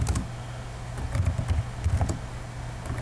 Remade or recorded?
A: recorded